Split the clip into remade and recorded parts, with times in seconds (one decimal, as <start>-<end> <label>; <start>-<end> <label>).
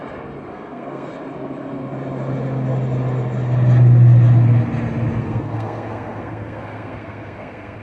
0.0-0.5 recorded; 0.5-1.1 remade; 1.1-5.2 recorded; 5.2-7.8 remade